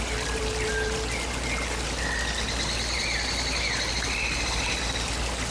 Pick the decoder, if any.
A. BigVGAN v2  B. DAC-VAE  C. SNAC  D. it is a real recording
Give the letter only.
A